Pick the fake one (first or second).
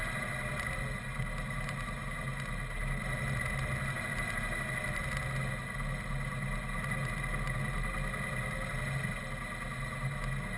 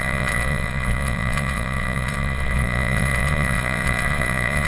second